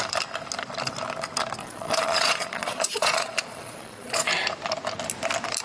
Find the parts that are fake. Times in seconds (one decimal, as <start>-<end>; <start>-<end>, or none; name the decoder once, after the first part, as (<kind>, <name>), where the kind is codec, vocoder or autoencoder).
1.6-4.3 (vocoder, Vocos)